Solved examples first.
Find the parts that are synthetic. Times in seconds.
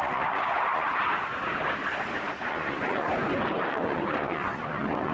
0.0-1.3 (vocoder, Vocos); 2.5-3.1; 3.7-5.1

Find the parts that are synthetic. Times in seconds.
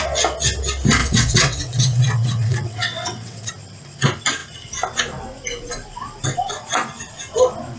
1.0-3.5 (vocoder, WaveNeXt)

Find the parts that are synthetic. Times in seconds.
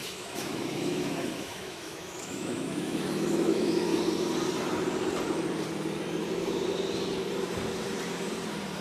0.0-3.9 (autoencoder, DAC-VAE)